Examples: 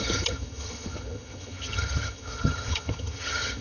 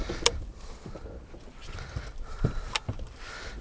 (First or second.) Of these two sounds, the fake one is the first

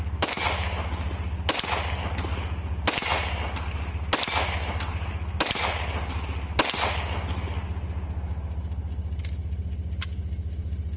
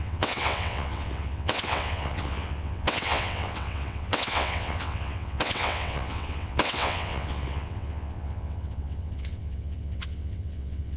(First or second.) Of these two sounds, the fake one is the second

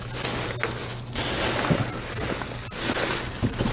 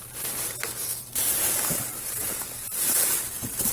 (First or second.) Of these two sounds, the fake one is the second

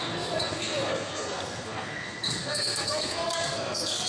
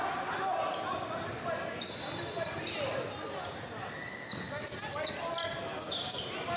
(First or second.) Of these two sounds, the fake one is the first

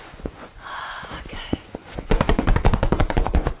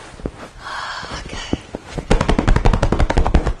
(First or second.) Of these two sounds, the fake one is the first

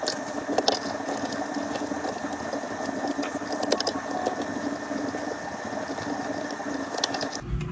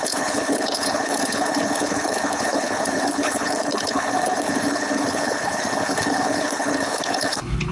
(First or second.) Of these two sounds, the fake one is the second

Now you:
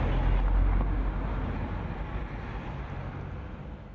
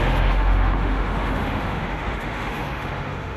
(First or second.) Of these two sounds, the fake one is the second